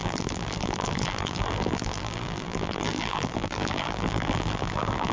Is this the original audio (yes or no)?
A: no